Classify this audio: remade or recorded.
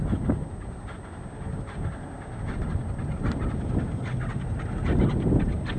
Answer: recorded